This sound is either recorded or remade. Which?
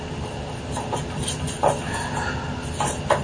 recorded